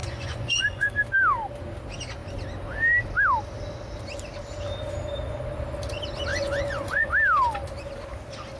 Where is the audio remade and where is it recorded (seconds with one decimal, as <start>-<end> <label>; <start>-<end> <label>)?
0.0-0.9 remade; 0.9-6.3 recorded; 6.3-7.1 remade; 7.1-8.6 recorded